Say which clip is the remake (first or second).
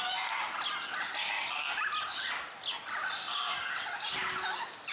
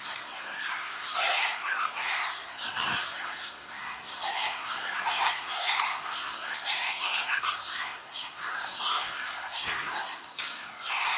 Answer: second